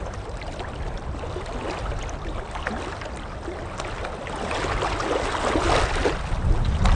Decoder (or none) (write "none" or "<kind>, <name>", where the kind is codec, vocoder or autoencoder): none